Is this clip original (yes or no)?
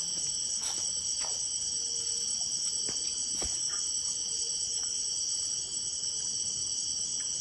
yes